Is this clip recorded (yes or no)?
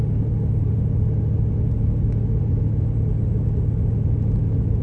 yes